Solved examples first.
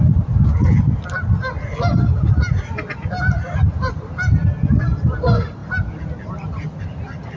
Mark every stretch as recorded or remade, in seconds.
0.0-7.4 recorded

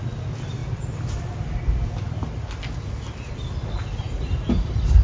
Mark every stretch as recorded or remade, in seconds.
0.0-5.0 recorded